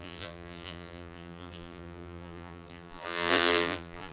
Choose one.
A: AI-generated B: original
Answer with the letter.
A